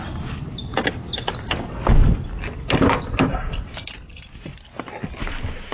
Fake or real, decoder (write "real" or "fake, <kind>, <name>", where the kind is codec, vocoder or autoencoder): real